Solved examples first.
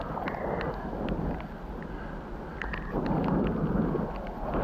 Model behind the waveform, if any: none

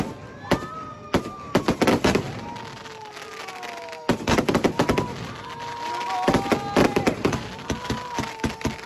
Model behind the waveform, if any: none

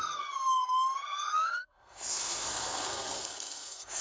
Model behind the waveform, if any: codec, SNAC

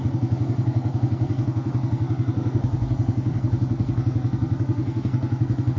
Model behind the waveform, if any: codec, SNAC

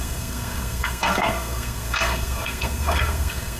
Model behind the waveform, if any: codec, SNAC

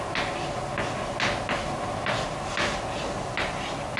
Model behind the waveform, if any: none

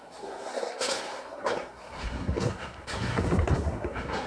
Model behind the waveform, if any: codec, SNAC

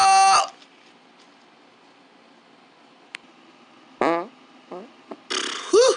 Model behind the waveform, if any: none